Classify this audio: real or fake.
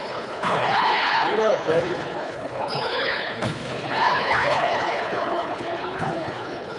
fake